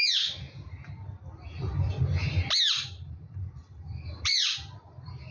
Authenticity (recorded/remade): recorded